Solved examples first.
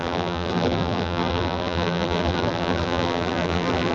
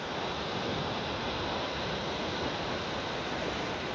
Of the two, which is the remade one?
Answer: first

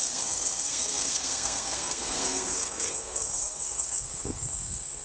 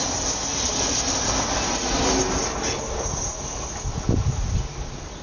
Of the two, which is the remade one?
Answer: first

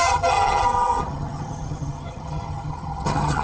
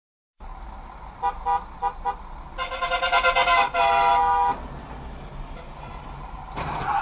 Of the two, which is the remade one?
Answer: first